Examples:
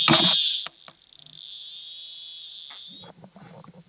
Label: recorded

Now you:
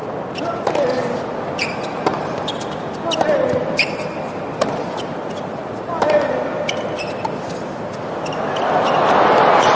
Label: recorded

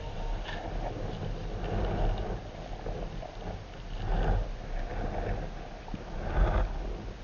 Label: recorded